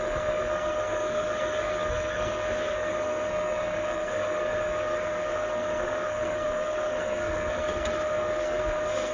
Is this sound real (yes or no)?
no